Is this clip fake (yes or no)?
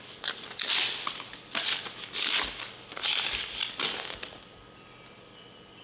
no